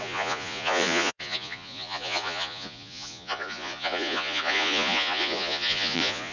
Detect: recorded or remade remade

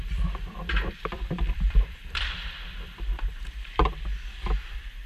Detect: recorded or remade remade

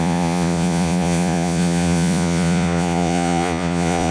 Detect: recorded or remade remade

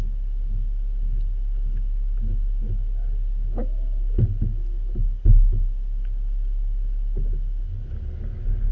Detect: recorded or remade recorded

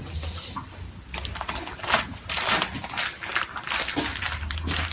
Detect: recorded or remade recorded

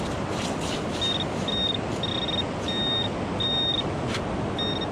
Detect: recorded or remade recorded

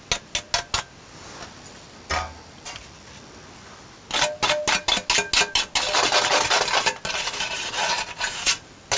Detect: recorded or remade recorded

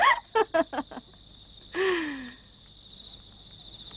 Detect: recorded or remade recorded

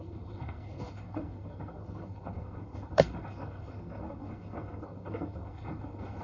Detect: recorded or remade remade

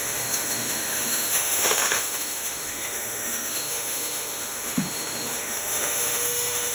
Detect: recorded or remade remade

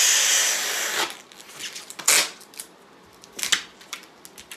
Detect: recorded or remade recorded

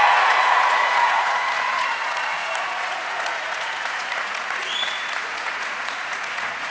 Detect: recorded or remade remade